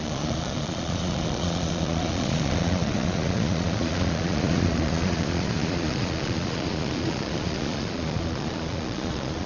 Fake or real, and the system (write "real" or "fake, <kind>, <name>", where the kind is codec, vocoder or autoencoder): fake, vocoder, Vocos